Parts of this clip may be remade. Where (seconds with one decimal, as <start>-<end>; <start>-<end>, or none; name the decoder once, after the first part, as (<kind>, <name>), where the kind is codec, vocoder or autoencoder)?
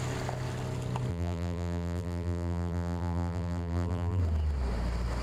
1.1-4.2 (vocoder, BigVGAN v2)